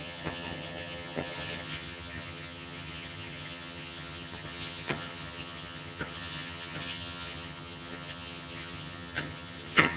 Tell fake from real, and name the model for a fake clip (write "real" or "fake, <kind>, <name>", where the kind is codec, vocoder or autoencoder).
fake, vocoder, HiFi-GAN